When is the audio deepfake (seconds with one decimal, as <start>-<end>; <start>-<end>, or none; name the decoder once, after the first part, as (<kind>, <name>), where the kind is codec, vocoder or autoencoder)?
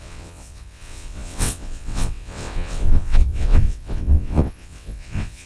0.0-5.5 (vocoder, WaveNeXt)